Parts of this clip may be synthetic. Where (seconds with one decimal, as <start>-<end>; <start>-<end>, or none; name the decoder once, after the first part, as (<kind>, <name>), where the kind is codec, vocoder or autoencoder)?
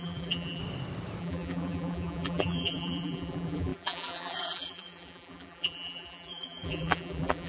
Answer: 0.0-0.6 (vocoder, BigVGAN v2); 1.2-7.5